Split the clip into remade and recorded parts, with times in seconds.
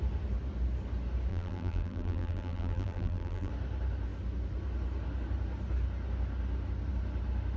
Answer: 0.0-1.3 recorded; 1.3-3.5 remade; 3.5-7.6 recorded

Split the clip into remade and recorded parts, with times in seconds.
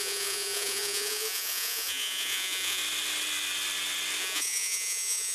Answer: 0.0-2.8 remade; 2.8-4.2 recorded; 4.2-5.3 remade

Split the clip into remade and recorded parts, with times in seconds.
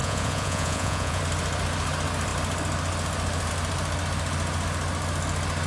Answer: 0.0-1.2 remade; 1.2-5.7 recorded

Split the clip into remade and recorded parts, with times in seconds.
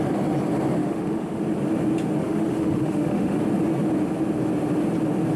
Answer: 0.0-0.8 recorded; 0.8-1.4 remade; 1.4-2.2 recorded; 2.2-3.4 remade; 3.4-5.4 recorded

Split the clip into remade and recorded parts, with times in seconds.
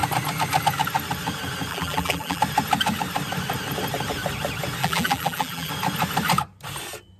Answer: 0.0-1.7 recorded; 1.7-2.4 remade; 2.4-4.8 recorded; 4.8-5.7 remade; 5.7-7.2 recorded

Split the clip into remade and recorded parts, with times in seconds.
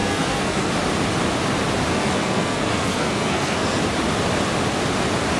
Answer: 0.0-0.7 remade; 0.7-1.9 recorded; 1.9-3.8 remade; 3.8-5.4 recorded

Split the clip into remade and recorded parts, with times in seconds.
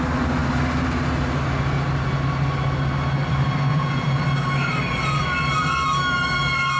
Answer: 0.0-3.7 recorded; 3.7-4.2 remade; 4.2-6.8 recorded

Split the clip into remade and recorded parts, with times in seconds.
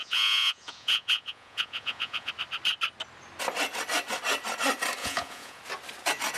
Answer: 0.0-2.3 remade; 2.3-5.0 recorded; 5.0-5.6 remade; 5.6-6.4 recorded